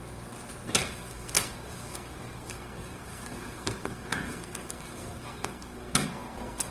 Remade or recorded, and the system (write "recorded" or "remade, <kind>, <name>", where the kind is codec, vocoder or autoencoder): remade, codec, SNAC